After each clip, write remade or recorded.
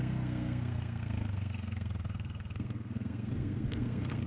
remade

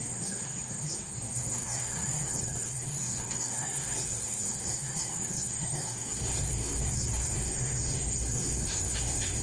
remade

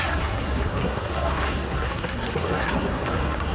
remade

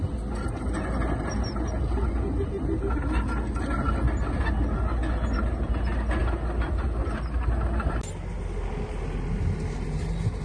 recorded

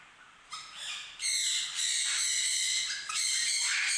recorded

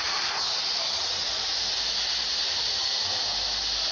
recorded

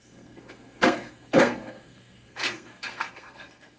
remade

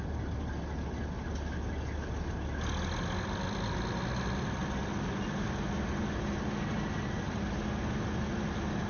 recorded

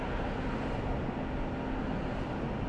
recorded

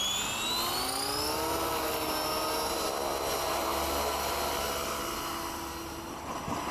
recorded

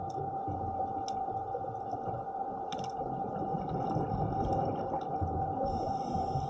recorded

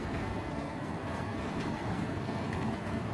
remade